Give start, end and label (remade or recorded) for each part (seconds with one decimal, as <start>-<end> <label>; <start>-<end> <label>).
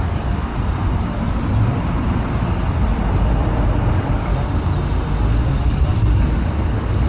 0.0-0.5 remade; 0.5-3.9 recorded; 3.9-4.3 remade; 4.3-5.4 recorded; 5.4-7.1 remade